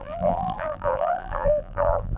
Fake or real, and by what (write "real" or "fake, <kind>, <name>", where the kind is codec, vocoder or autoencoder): fake, vocoder, BigVGAN v2